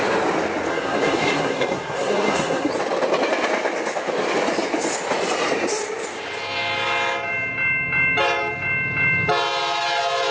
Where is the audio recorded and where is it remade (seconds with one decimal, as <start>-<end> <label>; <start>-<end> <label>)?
0.0-0.7 recorded; 0.7-2.7 remade; 2.7-10.3 recorded